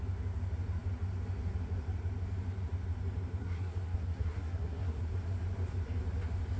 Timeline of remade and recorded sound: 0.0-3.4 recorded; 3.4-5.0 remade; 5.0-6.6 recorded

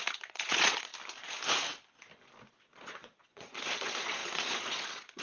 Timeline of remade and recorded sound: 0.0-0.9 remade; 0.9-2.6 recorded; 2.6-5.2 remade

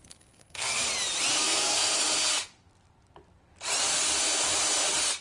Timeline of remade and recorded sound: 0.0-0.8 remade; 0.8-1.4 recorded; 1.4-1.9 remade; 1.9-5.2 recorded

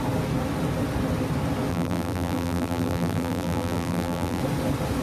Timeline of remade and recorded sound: 0.0-1.7 recorded; 1.7-4.4 remade; 4.4-5.0 recorded